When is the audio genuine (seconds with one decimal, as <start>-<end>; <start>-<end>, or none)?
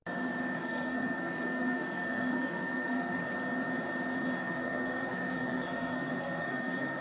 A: 0.0-0.6; 3.2-4.4